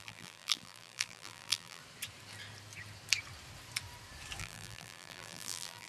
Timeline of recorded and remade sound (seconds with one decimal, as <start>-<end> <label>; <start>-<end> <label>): 0.0-1.8 remade; 1.8-4.4 recorded; 4.4-5.9 remade